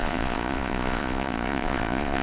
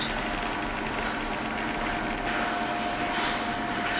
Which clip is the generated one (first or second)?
first